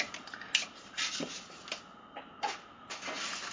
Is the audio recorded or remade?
recorded